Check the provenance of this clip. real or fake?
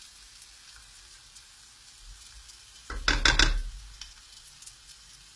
real